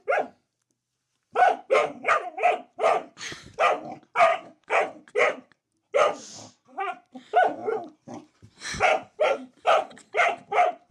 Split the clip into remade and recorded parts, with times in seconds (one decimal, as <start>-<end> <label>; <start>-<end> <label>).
0.0-1.4 recorded; 1.4-2.1 remade; 2.1-4.3 recorded; 4.3-4.8 remade; 4.8-10.9 recorded